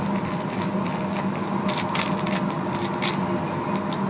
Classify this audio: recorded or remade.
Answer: recorded